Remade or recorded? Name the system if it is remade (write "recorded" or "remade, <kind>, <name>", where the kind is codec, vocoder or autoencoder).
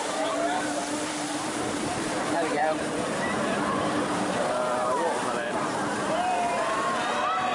remade, vocoder, BigVGAN v2